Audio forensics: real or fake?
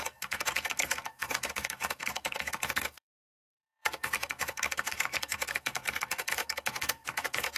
fake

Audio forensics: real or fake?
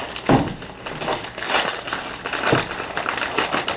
real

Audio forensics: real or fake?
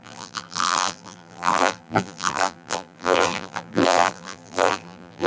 fake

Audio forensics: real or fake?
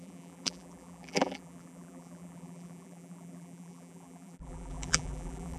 fake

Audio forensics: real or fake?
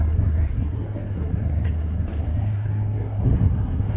fake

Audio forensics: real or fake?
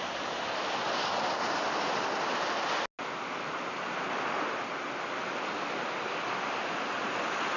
real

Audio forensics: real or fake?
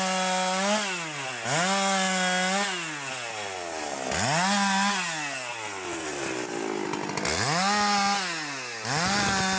real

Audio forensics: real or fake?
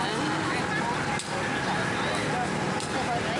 real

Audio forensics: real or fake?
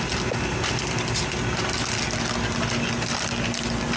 real